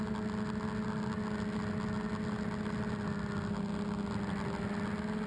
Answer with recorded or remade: recorded